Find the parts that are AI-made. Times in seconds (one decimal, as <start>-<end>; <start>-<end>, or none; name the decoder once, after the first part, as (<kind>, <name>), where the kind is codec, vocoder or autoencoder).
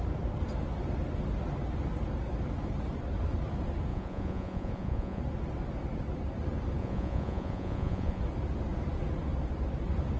3.9-5.2 (vocoder, Vocos); 6.8-8.2